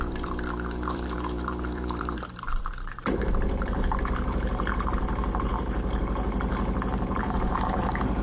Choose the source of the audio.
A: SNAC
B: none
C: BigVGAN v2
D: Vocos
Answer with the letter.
C